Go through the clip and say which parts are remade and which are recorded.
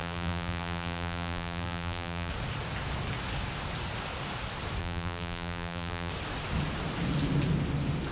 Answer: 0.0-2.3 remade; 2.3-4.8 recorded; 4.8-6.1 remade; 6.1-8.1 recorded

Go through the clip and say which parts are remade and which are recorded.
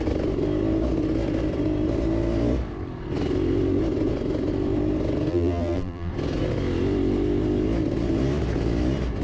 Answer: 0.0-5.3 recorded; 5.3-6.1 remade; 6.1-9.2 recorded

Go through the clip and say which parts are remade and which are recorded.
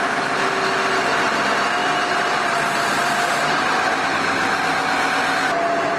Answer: 0.0-1.8 recorded; 1.8-2.4 remade; 2.4-6.0 recorded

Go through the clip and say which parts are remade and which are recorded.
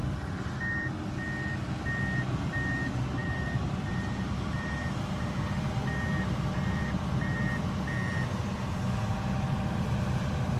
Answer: 0.0-3.2 recorded; 3.2-7.5 remade; 7.5-9.1 recorded; 9.1-10.2 remade; 10.2-10.6 recorded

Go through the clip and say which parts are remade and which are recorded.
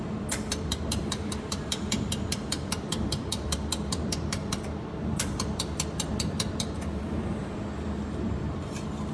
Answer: 0.0-9.1 remade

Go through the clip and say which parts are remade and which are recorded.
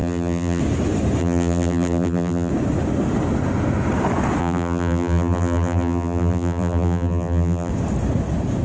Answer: 0.0-0.6 remade; 0.6-1.2 recorded; 1.2-2.5 remade; 2.5-4.4 recorded; 4.4-7.7 remade; 7.7-8.6 recorded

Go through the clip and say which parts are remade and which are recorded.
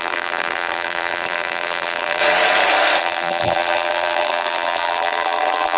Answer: 0.0-2.2 remade; 2.2-3.0 recorded; 3.0-5.8 remade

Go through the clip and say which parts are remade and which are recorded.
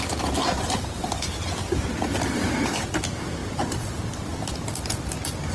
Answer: 0.0-0.4 recorded; 0.4-2.7 remade; 2.7-3.4 recorded; 3.4-4.5 remade; 4.5-5.5 recorded